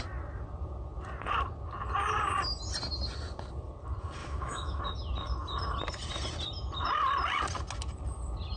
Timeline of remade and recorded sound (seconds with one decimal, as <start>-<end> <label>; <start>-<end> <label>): 0.0-4.2 recorded; 4.2-4.8 remade; 4.8-8.6 recorded